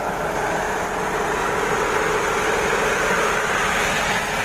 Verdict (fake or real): real